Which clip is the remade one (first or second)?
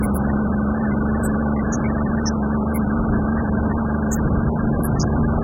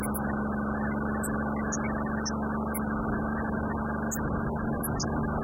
first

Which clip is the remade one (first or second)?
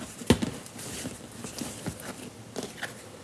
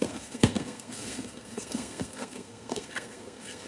second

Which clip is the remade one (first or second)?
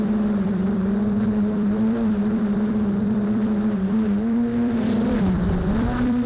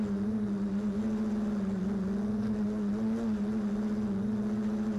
first